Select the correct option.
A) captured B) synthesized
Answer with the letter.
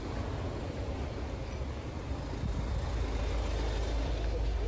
A